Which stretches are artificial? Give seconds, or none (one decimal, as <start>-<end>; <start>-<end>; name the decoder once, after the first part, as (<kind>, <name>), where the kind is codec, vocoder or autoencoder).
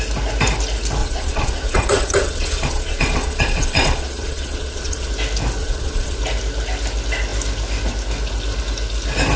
1.0-5.1 (vocoder, Vocos); 5.6-6.2